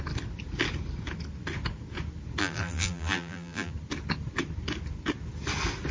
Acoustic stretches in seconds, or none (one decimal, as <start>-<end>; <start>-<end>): 0.0-2.4; 3.7-5.9